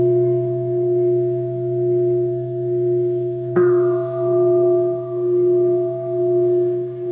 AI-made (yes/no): yes